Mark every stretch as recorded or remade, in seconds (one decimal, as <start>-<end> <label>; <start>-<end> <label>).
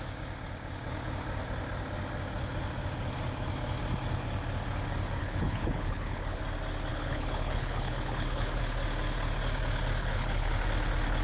0.0-5.2 recorded; 5.2-6.4 remade; 6.4-6.9 recorded; 6.9-8.6 remade; 8.6-10.0 recorded; 10.0-10.5 remade; 10.5-11.2 recorded